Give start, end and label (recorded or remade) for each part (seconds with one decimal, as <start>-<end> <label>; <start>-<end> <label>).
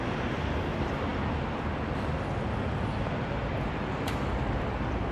0.0-5.1 recorded